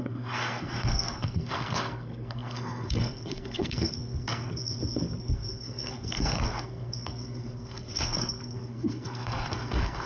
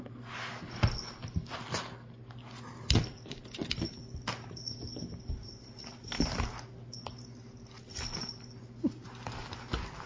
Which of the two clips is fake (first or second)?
first